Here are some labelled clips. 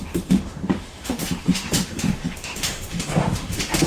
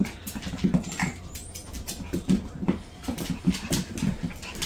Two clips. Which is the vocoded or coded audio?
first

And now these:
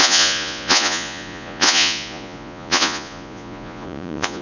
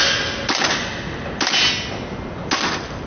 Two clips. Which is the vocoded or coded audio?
first